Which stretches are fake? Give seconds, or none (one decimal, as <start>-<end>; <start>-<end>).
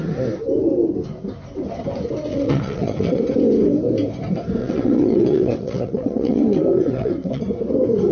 2.3-3.2; 4.6-7.4